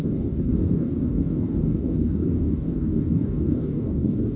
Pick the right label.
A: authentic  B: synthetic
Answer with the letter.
B